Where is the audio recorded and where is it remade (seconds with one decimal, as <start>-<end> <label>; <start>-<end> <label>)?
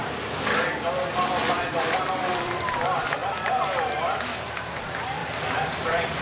0.0-1.6 recorded; 1.6-3.2 remade; 3.2-4.8 recorded; 4.8-6.2 remade